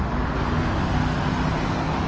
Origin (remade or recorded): recorded